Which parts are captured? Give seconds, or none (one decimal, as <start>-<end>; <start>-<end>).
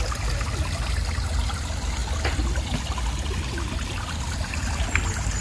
0.0-5.4